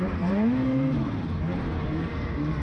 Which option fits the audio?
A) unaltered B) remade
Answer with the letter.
B